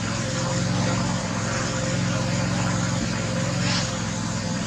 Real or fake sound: real